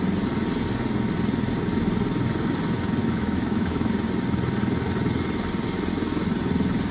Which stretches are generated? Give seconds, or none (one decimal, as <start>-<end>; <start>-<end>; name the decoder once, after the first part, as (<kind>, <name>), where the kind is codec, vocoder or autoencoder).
3.0-3.9 (autoencoder, DAC-VAE)